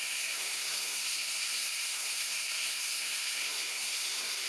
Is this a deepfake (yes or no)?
yes